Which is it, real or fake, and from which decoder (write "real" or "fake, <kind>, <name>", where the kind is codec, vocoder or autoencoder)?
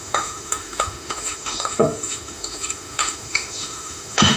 fake, autoencoder, DAC-VAE